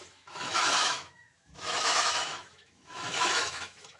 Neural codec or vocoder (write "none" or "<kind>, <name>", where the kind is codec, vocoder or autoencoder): autoencoder, DAC-VAE